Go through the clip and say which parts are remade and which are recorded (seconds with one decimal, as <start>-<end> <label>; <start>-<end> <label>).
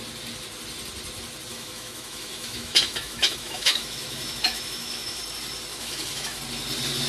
0.0-1.5 recorded; 1.5-5.2 remade; 5.2-5.7 recorded; 5.7-6.4 remade; 6.4-7.1 recorded